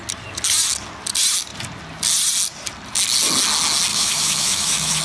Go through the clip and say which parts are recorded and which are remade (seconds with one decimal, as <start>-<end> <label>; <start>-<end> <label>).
0.0-3.9 recorded; 3.9-5.0 remade